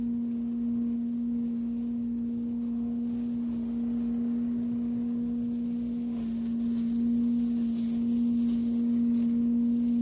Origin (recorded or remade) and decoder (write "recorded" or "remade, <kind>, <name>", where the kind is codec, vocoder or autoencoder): recorded